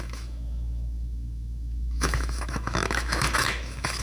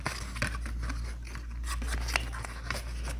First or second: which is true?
second